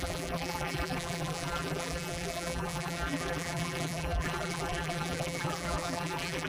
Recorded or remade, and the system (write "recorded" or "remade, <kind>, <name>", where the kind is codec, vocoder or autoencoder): remade, vocoder, BigVGAN v2